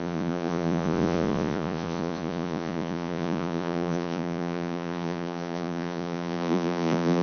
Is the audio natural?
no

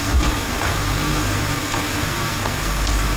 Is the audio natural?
no